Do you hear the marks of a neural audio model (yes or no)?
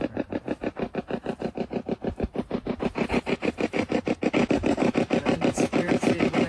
yes